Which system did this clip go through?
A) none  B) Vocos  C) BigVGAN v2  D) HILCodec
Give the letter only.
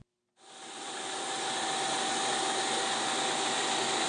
A